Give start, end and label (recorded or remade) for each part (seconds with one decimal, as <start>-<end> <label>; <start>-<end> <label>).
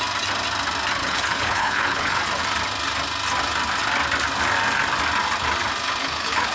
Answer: 0.0-1.0 recorded; 1.0-2.2 remade; 2.2-6.0 recorded; 6.0-6.5 remade